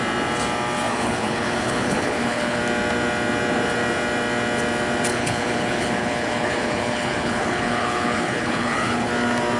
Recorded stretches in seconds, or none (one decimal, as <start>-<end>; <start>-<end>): 0.0-0.9; 2.6-5.1; 9.1-9.6